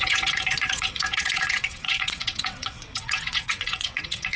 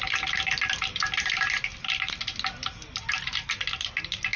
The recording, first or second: second